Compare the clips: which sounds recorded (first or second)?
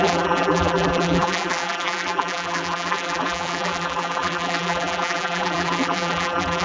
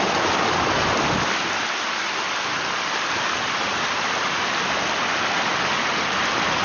second